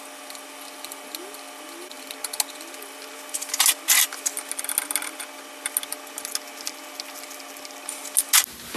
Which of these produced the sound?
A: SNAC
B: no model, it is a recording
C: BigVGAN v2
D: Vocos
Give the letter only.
B